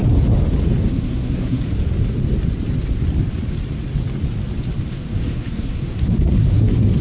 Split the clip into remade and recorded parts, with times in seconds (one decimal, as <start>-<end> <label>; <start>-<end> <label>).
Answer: 0.0-0.9 recorded; 0.9-1.7 remade; 1.7-4.9 recorded; 4.9-7.0 remade